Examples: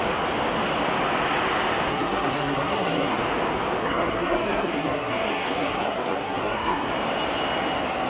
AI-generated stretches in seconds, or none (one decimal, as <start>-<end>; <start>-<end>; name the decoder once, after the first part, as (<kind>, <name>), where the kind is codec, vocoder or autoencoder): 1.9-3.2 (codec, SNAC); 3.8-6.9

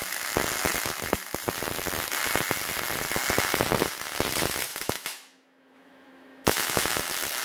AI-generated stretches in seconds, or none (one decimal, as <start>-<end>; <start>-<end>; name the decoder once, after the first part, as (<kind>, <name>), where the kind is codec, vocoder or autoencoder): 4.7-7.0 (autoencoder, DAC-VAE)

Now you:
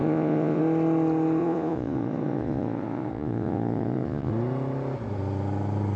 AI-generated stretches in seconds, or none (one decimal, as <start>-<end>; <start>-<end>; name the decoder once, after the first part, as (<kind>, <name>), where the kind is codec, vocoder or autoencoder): 0.0-0.6 (vocoder, Vocos); 1.4-4.3

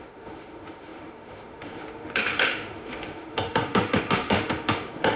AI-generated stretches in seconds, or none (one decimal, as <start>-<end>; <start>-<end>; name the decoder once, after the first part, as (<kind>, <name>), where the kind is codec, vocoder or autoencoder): 0.0-5.2 (autoencoder, DAC-VAE)